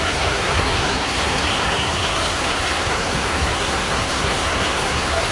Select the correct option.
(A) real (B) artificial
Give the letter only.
B